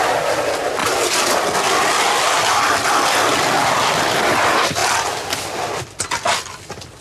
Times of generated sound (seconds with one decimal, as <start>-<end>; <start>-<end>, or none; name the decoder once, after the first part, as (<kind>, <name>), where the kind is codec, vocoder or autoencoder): none